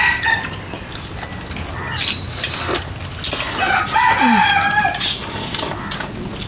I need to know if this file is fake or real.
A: real